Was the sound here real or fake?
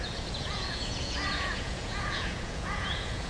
fake